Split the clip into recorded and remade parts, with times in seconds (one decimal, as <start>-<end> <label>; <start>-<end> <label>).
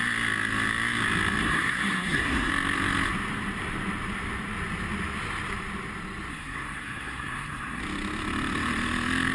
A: 0.0-1.4 recorded; 1.4-2.5 remade; 2.5-6.3 recorded; 6.3-7.8 remade; 7.8-9.3 recorded